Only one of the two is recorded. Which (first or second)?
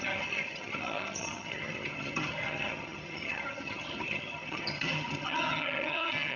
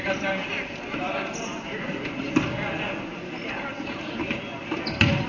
second